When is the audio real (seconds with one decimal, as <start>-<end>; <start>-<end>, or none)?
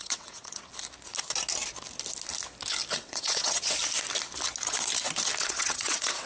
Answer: 0.7-2.9; 3.8-5.4